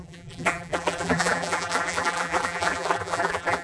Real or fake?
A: fake